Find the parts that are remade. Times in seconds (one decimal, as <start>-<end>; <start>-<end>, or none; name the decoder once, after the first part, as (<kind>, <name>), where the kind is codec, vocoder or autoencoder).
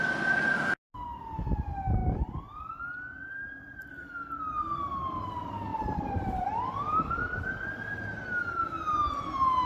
5.7-7.2 (vocoder, BigVGAN v2)